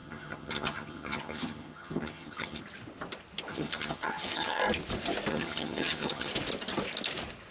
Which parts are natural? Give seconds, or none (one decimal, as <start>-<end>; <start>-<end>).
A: 2.6-3.5; 4.6-5.3; 6.3-7.5